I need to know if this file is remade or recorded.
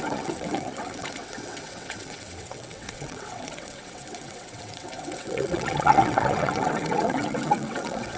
remade